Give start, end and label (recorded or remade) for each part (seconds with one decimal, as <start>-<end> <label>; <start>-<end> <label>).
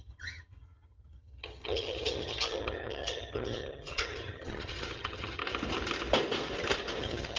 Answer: 0.0-5.4 remade; 5.4-7.0 recorded; 7.0-7.4 remade